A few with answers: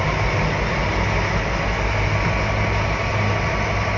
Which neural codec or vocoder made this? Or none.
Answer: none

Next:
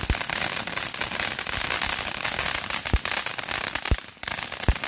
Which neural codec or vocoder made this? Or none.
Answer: none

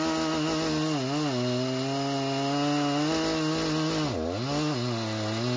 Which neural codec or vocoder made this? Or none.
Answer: none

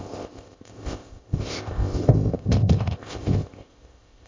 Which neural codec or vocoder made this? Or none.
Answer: codec, ZipCodec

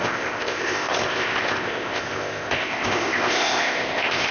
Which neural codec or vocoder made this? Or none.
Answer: codec, ZipCodec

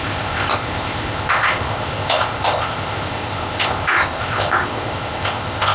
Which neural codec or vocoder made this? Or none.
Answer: codec, ZipCodec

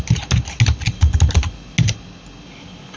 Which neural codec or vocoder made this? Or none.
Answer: none